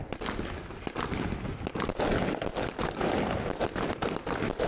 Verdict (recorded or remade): recorded